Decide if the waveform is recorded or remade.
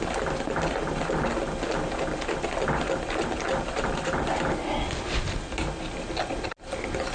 recorded